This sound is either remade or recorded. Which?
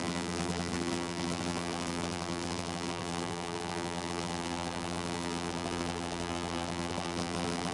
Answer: remade